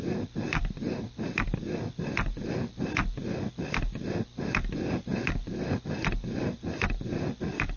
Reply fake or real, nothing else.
real